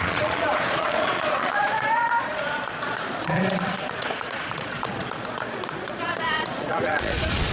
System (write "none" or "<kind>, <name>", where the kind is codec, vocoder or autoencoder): vocoder, Vocos